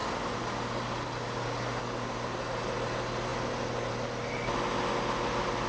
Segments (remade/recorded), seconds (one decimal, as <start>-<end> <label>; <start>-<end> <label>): 0.0-5.7 recorded